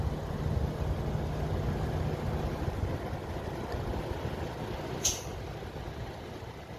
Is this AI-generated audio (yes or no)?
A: no